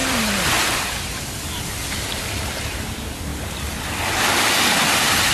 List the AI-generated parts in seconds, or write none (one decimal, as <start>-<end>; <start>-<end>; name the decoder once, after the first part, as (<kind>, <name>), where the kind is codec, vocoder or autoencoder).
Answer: 0.0-3.3 (vocoder, BigVGAN v2); 4.2-5.3